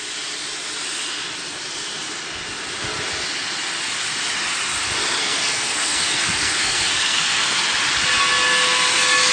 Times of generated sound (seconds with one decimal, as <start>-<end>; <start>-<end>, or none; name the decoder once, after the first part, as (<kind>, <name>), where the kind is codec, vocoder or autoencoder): 5.2-7.6 (codec, SNAC)